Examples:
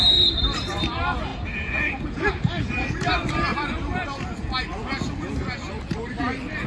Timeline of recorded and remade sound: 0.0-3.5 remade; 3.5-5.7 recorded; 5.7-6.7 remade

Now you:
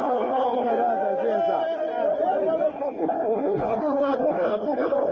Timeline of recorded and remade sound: 0.0-0.7 remade; 0.7-2.7 recorded; 2.7-5.1 remade

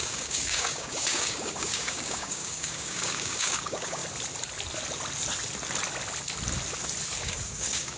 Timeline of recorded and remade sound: 0.0-4.0 remade; 4.0-7.2 recorded; 7.2-8.0 remade

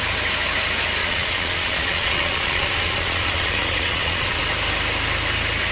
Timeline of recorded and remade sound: 0.0-1.0 recorded; 1.0-4.4 remade; 4.4-5.7 recorded

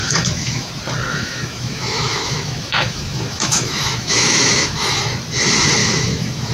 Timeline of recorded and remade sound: 0.0-0.7 remade; 0.7-1.1 recorded; 1.1-5.0 remade; 5.0-5.8 recorded; 5.8-6.5 remade